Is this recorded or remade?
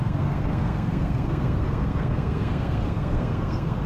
remade